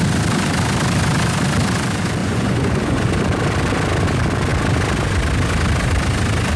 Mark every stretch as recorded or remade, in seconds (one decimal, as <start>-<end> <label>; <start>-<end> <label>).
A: 0.0-2.2 recorded; 2.2-3.1 remade; 3.1-6.6 recorded